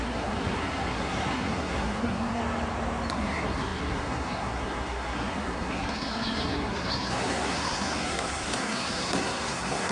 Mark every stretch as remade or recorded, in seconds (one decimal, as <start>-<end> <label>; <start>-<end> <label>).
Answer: 0.0-2.4 remade; 2.4-3.1 recorded; 3.1-9.9 remade